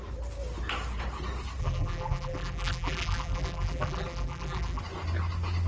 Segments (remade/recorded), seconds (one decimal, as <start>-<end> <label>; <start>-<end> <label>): 0.0-1.6 recorded; 1.6-4.8 remade; 4.8-5.7 recorded